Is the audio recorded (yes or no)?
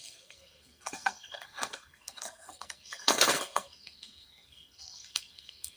no